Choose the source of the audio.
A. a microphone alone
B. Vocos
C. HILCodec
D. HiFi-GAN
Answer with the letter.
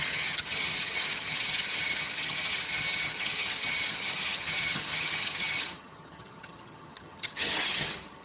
D